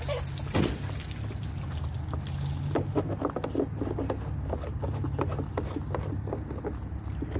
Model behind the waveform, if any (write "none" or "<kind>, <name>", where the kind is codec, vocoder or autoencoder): none